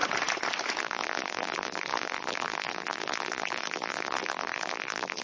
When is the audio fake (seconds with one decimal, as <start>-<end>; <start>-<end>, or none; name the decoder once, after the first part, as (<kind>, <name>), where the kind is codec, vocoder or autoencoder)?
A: 0.8-5.2 (vocoder, BigVGAN v2)